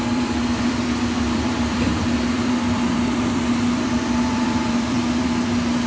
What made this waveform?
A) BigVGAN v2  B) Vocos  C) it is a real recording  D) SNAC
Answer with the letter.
A